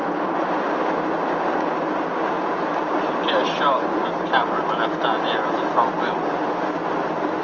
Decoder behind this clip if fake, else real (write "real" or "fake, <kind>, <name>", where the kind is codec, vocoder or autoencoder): real